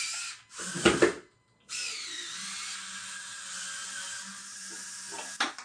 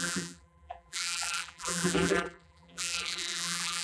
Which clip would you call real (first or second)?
first